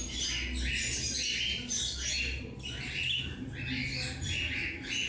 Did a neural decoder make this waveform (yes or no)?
no